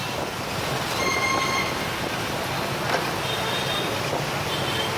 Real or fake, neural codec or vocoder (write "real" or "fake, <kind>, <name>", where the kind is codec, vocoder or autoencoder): real